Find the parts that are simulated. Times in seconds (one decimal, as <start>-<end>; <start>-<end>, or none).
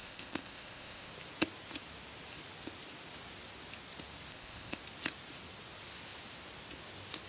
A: 0.0-1.1; 4.3-4.8